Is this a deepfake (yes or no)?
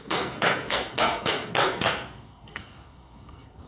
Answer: yes